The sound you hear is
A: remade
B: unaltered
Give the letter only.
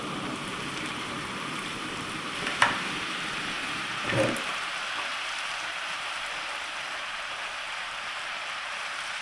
A